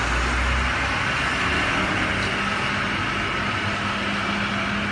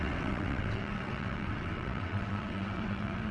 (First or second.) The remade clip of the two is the second